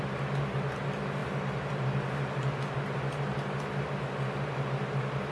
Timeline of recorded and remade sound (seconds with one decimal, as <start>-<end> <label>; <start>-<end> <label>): 0.0-5.3 recorded